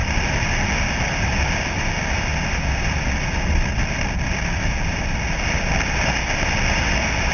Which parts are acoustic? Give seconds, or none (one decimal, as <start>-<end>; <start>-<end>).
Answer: 0.0-7.3